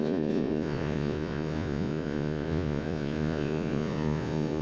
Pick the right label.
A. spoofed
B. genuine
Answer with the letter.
A